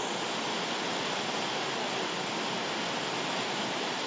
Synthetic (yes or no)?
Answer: no